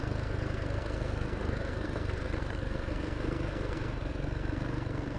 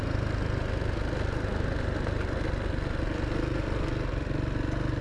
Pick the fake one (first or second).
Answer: first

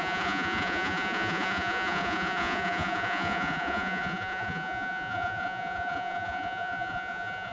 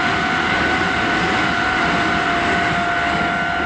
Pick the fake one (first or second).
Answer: first